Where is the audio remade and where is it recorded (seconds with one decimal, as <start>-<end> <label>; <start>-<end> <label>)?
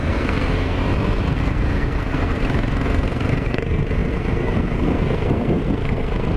0.0-0.8 remade; 0.8-1.3 recorded; 1.3-6.4 remade